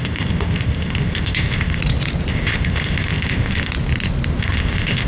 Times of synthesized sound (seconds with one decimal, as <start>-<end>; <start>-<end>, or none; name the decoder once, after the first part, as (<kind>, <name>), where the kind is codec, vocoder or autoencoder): 0.0-1.8 (codec, ZipCodec); 2.3-3.7; 4.4-5.1